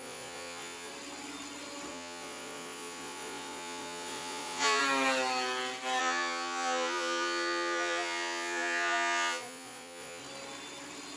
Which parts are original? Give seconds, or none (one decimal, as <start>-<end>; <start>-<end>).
0.9-1.9; 4.8-6.0; 10.2-11.2